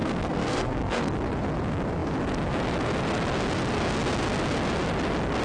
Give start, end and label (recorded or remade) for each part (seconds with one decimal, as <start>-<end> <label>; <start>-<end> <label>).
0.0-1.1 remade; 1.1-5.4 recorded